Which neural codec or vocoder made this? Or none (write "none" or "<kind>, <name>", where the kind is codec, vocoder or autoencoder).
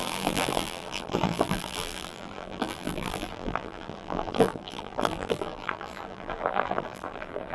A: vocoder, BigVGAN v2